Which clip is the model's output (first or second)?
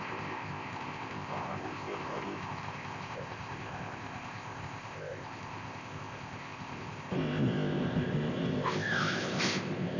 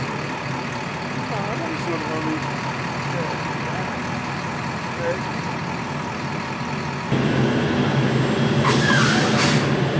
first